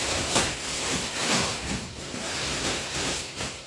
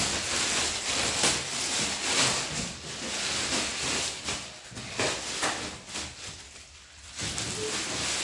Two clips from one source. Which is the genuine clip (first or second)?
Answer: second